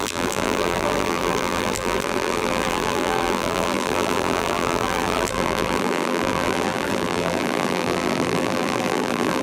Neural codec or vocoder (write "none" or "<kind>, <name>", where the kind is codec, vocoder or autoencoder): vocoder, BigVGAN v2